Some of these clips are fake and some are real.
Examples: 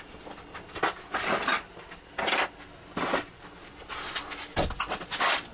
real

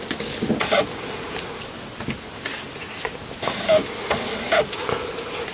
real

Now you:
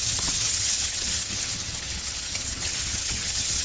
fake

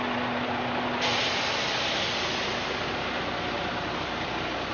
real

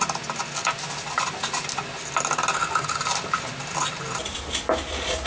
real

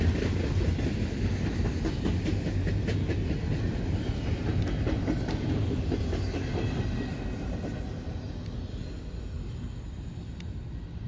real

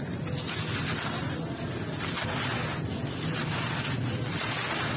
real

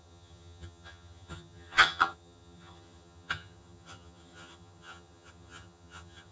fake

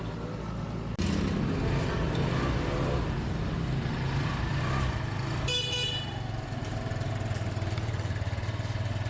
real